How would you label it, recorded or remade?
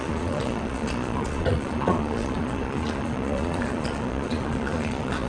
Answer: remade